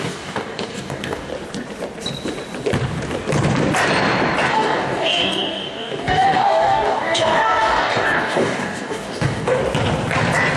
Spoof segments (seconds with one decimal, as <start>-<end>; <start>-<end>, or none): 0.0-1.3; 4.5-9.6